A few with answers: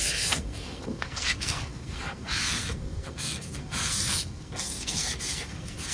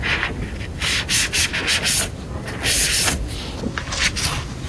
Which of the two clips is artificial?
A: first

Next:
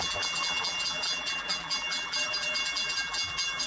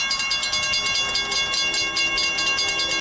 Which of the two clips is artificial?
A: first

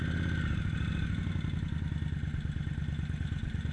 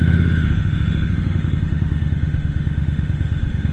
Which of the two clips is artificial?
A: second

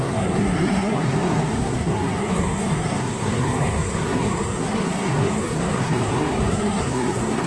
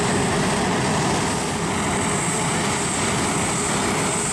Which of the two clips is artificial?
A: first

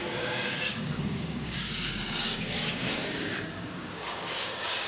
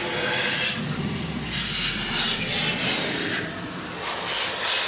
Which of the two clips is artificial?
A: first